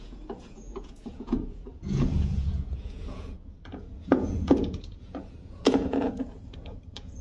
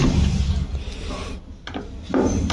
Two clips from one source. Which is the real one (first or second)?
second